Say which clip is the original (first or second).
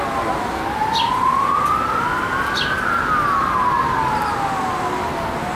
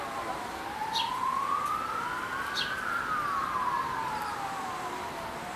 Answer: first